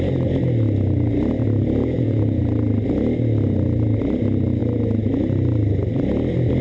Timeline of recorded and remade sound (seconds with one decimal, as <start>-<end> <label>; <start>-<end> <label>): 0.0-1.8 recorded; 1.8-2.4 remade; 2.4-6.6 recorded